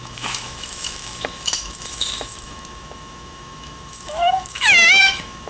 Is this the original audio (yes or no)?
no